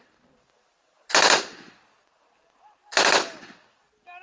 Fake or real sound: real